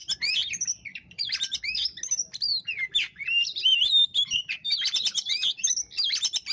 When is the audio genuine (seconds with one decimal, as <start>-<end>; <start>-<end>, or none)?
0.0-0.9; 1.6-2.5; 5.7-6.5